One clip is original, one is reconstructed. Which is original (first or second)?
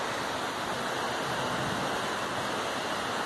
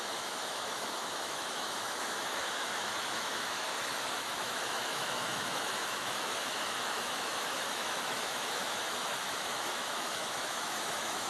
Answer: first